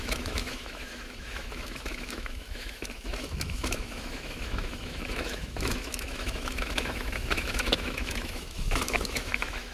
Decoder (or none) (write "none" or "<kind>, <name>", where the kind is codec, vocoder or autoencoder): autoencoder, DAC-VAE